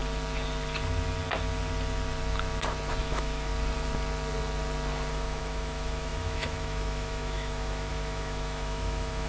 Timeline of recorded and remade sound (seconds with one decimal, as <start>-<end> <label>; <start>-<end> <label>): 0.0-3.0 recorded; 3.0-3.5 remade; 3.5-5.1 recorded; 5.1-9.3 remade